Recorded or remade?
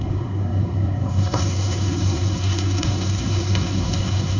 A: remade